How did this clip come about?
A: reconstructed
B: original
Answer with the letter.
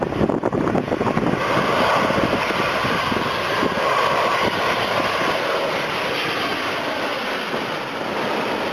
B